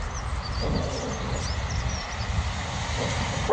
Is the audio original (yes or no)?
yes